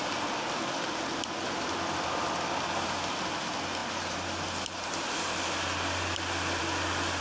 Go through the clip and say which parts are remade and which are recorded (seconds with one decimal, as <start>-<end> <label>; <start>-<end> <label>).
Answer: 0.0-7.2 recorded